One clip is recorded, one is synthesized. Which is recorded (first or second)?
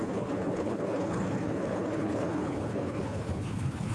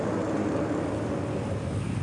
second